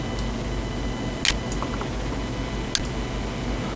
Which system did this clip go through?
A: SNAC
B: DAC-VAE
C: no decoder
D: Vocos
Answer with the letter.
C